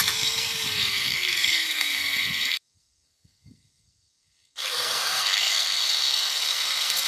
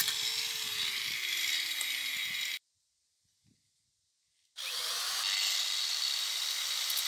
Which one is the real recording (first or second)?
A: second